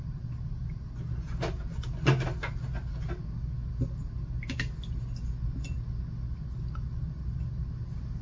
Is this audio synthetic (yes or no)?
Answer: no